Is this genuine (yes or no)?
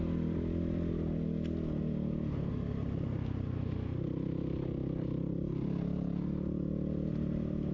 yes